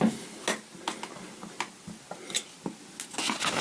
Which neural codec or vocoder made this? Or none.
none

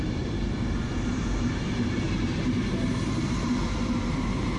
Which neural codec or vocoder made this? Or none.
vocoder, BigVGAN v2